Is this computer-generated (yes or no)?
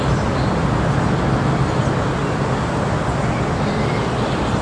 no